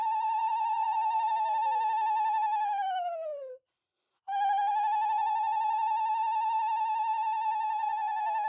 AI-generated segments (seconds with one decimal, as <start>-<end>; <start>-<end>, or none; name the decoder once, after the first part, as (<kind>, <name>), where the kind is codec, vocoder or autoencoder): 0.0-1.3 (vocoder, BigVGAN v2)